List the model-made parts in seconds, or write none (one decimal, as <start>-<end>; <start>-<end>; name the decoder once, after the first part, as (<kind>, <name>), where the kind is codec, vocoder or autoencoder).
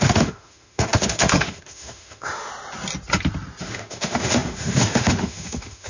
0.0-2.5 (autoencoder, DAC-VAE); 3.6-5.9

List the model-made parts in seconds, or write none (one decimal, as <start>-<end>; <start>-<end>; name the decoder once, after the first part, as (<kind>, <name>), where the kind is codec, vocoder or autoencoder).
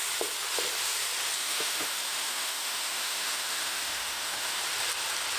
1.4-4.6 (autoencoder, DAC-VAE)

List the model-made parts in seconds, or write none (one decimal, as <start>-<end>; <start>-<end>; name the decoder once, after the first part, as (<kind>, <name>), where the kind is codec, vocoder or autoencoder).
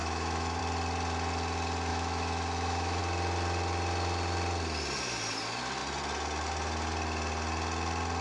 0.0-0.6 (autoencoder, DAC-VAE); 1.9-3.0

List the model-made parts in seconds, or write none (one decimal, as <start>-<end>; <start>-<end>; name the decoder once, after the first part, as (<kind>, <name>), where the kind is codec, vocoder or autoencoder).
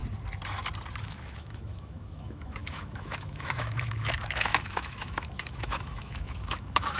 1.0-7.0 (autoencoder, DAC-VAE)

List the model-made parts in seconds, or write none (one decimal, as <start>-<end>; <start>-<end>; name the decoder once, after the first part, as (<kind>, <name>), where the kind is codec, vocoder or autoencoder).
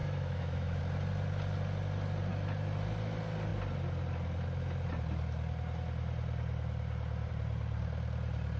0.0-0.8 (autoencoder, DAC-VAE)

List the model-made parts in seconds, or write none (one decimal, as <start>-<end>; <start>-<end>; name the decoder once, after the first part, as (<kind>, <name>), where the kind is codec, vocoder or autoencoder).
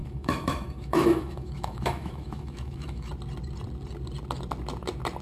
0.0-3.1 (autoencoder, DAC-VAE)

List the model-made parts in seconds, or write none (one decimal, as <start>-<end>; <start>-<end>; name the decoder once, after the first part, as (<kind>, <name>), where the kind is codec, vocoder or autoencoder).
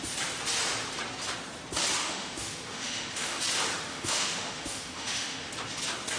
2.0-3.4 (autoencoder, DAC-VAE); 3.9-5.5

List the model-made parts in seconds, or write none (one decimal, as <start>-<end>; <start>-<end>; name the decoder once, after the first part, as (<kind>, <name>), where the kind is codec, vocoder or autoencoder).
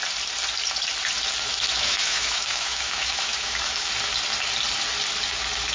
1.5-3.9 (autoencoder, DAC-VAE)